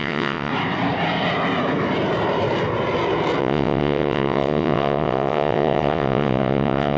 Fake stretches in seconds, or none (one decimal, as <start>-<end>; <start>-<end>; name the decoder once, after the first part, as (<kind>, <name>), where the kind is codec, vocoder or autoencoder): 0.0-0.5 (vocoder, WaveNeXt); 3.4-7.0